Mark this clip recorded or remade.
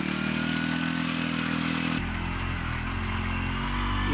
recorded